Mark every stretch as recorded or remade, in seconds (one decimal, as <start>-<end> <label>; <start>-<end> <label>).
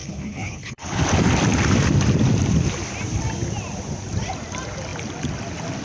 0.0-1.0 remade; 1.0-5.8 recorded